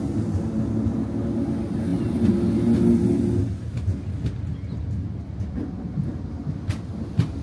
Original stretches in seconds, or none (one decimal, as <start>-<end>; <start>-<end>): 0.0-7.4